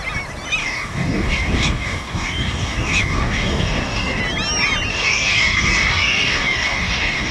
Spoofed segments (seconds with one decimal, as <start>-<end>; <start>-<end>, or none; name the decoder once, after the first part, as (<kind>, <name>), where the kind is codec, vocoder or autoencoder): 0.6-4.2 (codec, DAC); 4.9-7.3